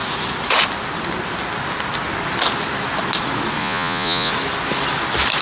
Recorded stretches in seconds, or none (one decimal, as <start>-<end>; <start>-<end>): 0.0-3.6; 4.3-5.4

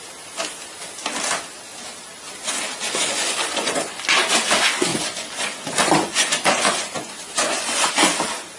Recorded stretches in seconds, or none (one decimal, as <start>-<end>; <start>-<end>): 0.0-3.0; 4.1-4.9; 7.9-8.6